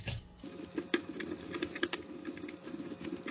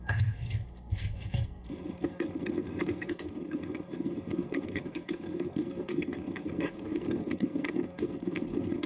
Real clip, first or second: first